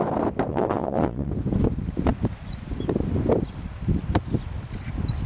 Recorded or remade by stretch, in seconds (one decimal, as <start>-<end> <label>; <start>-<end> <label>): 0.0-0.5 recorded; 0.5-1.3 remade; 1.3-5.3 recorded